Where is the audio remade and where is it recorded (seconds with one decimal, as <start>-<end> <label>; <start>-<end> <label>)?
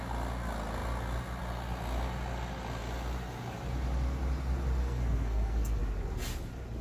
0.0-4.8 recorded; 4.8-5.8 remade; 5.8-6.8 recorded